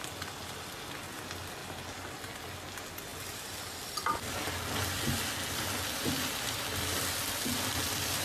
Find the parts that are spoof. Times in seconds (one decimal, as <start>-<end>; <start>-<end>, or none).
none